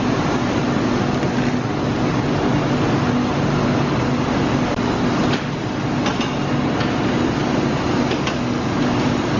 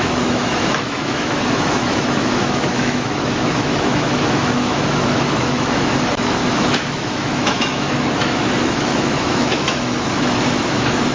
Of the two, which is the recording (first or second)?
first